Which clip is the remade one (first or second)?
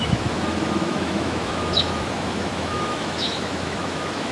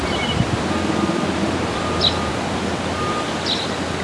first